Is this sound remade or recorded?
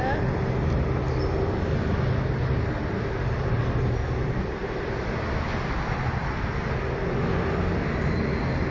recorded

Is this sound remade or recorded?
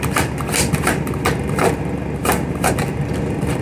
recorded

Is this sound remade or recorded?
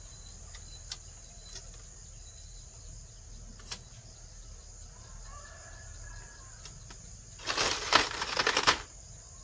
recorded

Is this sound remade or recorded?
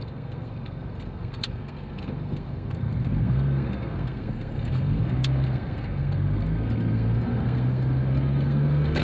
remade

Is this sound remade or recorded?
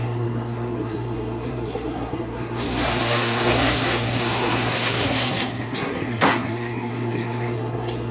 remade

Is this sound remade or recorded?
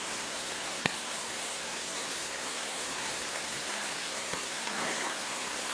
remade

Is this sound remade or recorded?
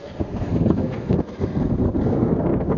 remade